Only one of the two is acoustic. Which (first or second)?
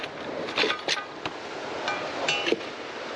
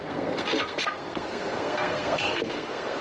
first